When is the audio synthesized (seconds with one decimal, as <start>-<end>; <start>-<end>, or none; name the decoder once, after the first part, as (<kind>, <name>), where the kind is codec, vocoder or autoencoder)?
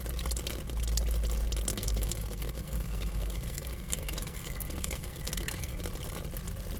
1.7-5.8 (codec, SNAC)